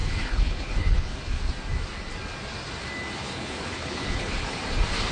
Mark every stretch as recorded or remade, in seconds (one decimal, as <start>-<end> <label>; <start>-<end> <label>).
0.0-1.5 remade; 1.5-3.2 recorded; 3.2-4.6 remade; 4.6-5.1 recorded